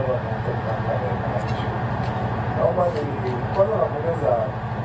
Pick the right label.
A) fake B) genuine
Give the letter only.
B